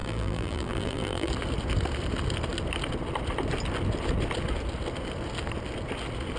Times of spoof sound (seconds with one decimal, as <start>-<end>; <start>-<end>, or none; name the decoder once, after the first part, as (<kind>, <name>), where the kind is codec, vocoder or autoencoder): 0.0-1.3 (vocoder, BigVGAN v2)